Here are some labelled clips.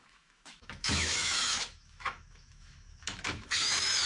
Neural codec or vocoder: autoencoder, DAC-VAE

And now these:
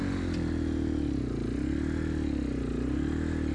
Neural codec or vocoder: none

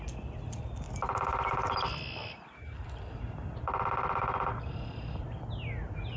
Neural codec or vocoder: none